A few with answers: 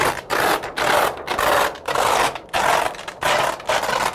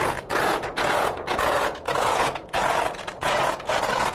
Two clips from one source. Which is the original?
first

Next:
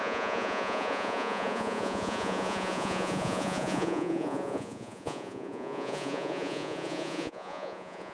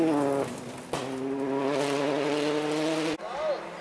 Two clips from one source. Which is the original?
second